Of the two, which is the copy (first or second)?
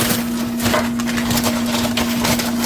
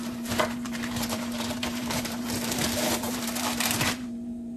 second